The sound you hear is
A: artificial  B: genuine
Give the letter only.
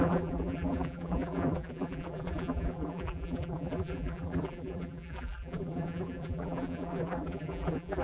A